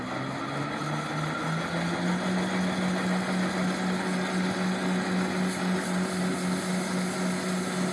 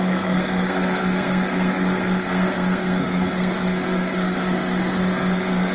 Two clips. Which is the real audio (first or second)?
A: first